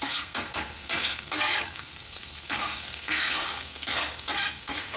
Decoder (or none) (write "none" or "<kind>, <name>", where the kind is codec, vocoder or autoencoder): codec, SNAC